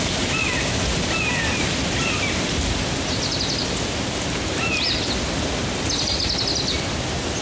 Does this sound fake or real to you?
real